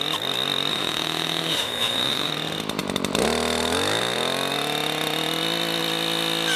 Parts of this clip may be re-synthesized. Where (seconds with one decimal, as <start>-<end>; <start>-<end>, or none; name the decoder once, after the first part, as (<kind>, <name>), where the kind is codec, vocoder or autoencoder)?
0.7-2.3 (autoencoder, DAC-VAE)